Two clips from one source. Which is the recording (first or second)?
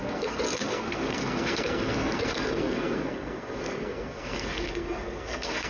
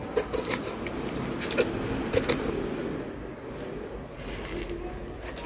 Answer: second